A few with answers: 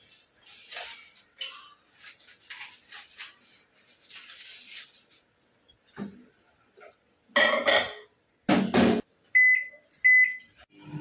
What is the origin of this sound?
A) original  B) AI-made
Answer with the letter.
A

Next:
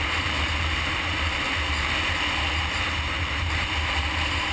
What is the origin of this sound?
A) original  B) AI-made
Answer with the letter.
B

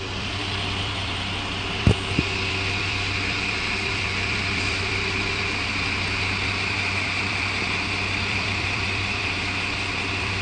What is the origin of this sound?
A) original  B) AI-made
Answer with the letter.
B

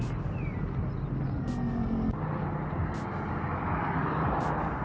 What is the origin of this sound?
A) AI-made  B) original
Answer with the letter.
B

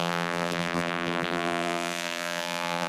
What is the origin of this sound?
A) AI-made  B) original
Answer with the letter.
A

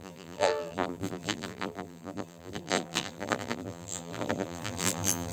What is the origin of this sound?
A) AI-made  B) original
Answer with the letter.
A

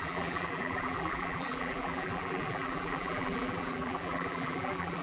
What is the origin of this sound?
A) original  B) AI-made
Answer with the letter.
B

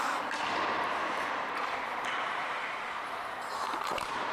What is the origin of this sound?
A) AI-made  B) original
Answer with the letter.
A